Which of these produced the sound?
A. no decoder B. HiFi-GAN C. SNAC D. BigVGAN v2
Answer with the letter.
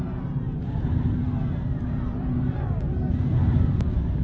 D